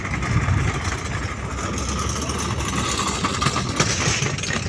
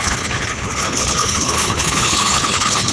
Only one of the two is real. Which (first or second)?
first